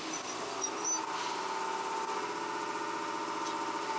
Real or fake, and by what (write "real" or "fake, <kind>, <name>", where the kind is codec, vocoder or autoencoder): real